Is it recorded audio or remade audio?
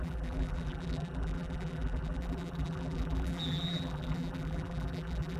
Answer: remade